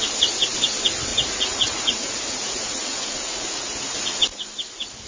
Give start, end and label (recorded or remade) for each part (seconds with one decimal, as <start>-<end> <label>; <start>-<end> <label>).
0.0-1.1 recorded; 1.1-4.2 remade; 4.2-5.1 recorded